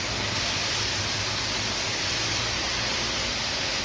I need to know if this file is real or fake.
real